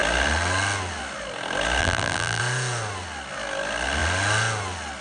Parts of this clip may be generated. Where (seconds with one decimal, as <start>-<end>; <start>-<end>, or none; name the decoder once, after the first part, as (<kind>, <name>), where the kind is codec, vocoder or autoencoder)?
1.8-2.4 (vocoder, BigVGAN v2)